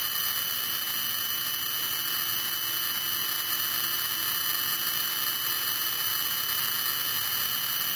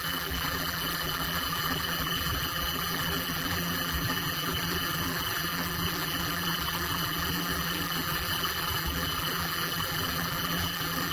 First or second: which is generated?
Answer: second